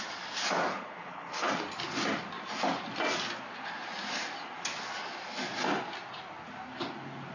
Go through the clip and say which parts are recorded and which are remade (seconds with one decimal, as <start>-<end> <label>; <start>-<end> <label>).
0.0-0.7 recorded; 0.7-1.5 remade; 1.5-7.3 recorded